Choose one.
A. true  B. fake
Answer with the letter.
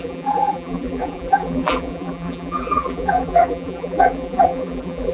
B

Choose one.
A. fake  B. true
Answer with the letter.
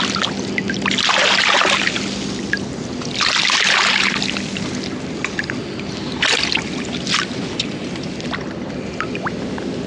B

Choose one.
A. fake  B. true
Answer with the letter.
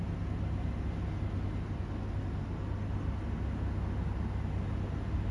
B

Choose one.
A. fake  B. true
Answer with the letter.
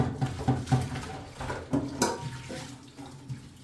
B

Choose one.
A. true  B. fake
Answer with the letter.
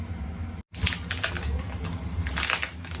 A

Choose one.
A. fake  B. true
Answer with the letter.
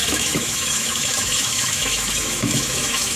A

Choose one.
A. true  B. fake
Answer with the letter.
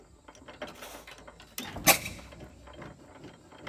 A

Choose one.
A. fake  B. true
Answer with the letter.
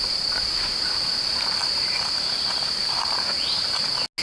B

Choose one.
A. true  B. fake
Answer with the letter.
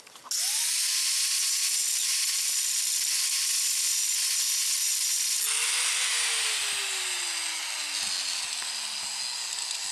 A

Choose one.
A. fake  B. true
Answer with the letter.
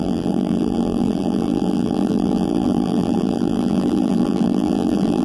A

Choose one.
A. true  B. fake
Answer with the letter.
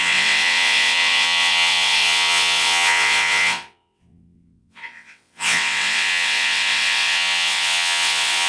B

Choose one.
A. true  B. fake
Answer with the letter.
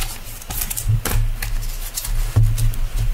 A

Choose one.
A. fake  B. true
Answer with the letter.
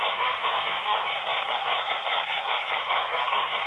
A